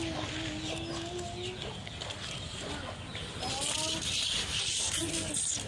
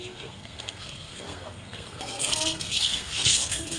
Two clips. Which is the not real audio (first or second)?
second